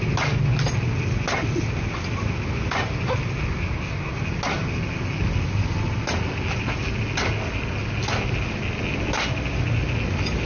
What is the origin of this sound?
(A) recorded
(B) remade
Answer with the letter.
A